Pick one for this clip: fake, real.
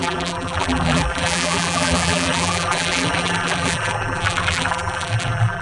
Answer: fake